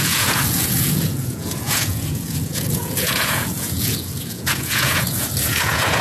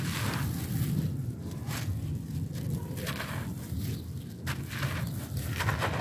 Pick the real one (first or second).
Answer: second